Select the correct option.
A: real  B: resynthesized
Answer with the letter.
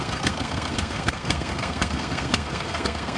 B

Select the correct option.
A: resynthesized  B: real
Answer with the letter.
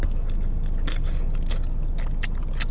B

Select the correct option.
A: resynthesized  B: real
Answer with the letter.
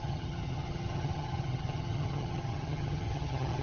A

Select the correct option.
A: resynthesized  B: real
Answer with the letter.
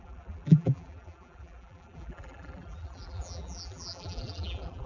A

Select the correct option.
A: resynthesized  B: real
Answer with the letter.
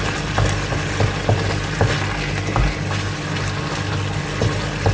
B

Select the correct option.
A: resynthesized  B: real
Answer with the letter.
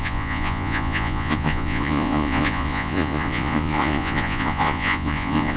A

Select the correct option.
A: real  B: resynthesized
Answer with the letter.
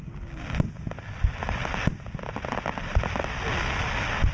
A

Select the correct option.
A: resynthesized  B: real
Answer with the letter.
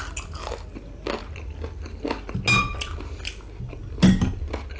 B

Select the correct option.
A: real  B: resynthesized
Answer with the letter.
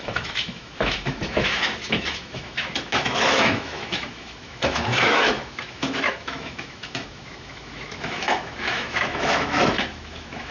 B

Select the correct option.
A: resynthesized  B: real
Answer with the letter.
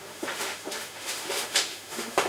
A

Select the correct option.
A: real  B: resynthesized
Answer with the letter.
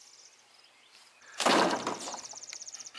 B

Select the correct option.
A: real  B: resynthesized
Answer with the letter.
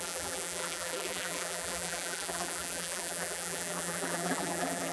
B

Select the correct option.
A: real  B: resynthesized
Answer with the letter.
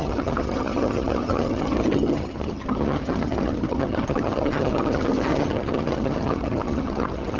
B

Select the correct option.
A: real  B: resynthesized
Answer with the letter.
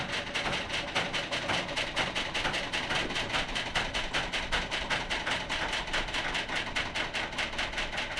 A